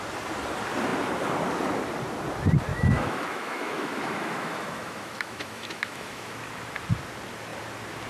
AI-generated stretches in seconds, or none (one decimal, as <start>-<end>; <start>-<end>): 2.7-6.3